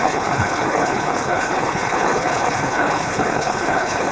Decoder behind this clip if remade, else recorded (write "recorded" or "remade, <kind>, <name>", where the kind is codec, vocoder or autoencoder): remade, codec, HILCodec